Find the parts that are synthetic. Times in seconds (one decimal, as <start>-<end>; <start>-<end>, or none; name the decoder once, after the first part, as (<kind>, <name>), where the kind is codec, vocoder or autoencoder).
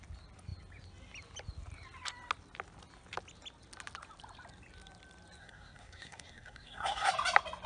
5.4-7.1 (codec, SNAC)